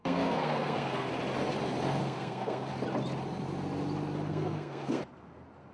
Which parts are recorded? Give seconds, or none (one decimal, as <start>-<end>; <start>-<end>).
1.1-2.0; 2.7-4.3; 5.0-5.7

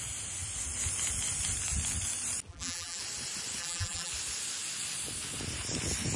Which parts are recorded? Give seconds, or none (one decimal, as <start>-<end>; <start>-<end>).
0.0-2.5; 3.0-3.6; 4.1-6.2